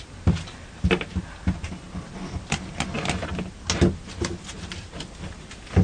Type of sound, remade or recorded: recorded